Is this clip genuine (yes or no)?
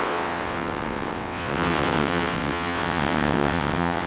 no